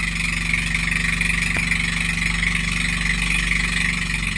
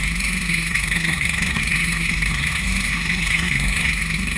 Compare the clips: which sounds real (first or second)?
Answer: first